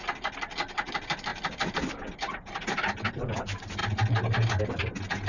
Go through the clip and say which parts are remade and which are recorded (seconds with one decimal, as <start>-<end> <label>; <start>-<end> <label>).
0.0-5.3 recorded